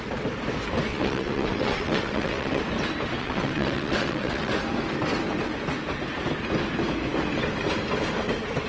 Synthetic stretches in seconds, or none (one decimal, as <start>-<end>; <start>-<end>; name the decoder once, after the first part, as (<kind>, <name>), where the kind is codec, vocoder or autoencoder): 0.9-2.6 (vocoder, WaveNeXt); 3.2-4.5